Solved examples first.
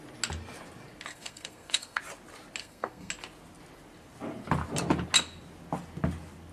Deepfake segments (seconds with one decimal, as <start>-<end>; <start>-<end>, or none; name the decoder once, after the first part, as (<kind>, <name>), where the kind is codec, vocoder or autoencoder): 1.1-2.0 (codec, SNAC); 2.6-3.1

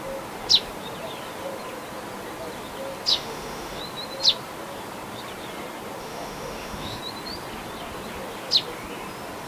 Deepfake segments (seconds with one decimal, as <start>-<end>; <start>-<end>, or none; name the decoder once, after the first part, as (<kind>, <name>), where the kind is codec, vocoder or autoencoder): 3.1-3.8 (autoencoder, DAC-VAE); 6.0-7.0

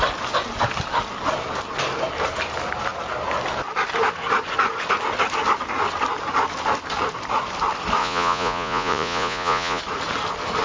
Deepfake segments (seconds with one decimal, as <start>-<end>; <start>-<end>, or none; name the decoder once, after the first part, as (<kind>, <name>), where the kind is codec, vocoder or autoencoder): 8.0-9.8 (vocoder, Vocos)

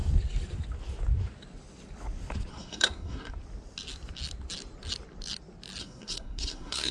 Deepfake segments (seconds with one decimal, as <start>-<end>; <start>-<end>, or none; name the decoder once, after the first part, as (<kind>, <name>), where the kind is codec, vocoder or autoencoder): 2.5-3.3 (codec, SNAC); 5.8-6.9

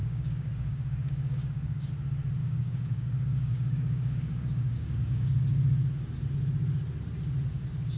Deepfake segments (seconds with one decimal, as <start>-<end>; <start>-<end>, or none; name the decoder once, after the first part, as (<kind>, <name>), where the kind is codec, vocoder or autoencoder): 0.0-1.9 (codec, DAC); 2.4-5.4

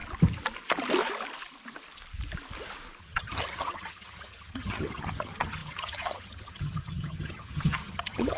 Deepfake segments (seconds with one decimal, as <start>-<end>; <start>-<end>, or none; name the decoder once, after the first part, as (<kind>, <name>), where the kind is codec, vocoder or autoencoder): 3.0-8.4 (vocoder, HiFi-GAN)

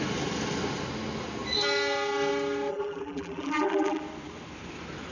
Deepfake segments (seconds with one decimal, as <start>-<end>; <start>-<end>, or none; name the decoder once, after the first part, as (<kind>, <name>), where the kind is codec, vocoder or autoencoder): 2.7-4.0 (vocoder, BigVGAN v2)

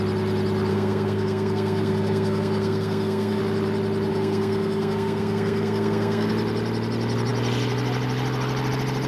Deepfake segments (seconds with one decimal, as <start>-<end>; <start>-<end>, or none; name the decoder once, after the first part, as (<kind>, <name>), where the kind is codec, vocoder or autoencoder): 0.7-3.4 (codec, SNAC); 4.1-6.3